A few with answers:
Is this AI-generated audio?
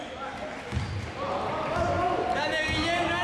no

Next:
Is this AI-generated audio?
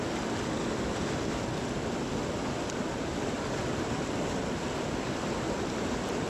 no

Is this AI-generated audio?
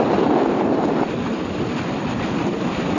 no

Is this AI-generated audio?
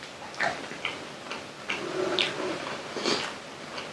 no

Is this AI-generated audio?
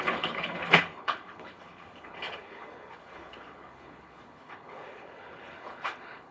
yes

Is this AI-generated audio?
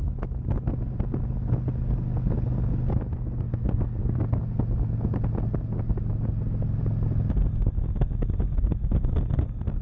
no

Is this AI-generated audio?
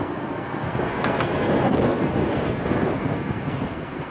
yes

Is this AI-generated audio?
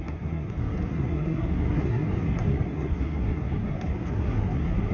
yes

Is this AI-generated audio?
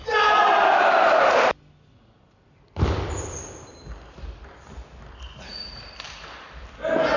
no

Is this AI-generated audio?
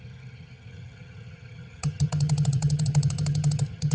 yes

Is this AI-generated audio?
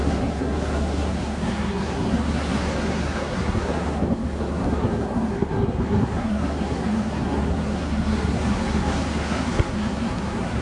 yes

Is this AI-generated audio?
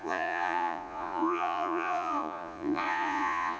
yes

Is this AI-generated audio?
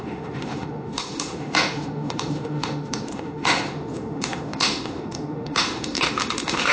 yes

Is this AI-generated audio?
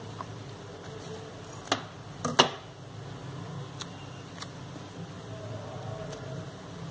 no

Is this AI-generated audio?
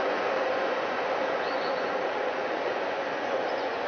yes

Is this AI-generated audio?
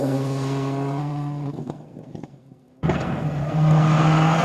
yes